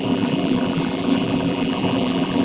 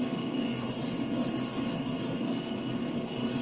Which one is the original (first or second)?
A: second